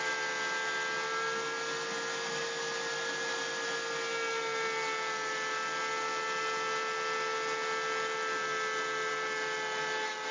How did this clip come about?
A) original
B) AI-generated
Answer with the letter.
A